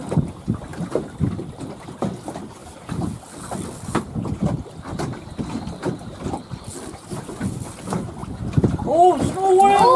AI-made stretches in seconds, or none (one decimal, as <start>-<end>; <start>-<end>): none